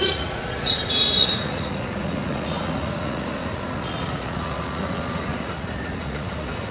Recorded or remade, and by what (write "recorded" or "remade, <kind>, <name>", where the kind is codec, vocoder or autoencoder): remade, vocoder, Vocos